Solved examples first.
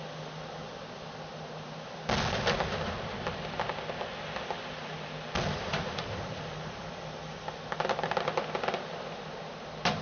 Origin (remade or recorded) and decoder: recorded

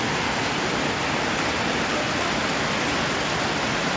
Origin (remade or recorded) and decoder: recorded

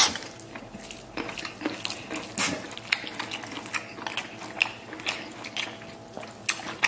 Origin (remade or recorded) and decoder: recorded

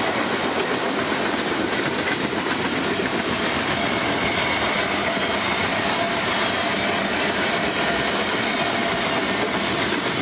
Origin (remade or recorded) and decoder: remade, vocoder, BigVGAN v2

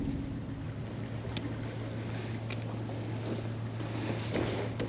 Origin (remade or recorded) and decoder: recorded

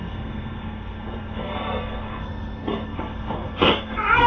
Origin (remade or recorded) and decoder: remade, codec, SNAC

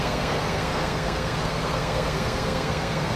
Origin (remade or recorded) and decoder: remade, codec, SNAC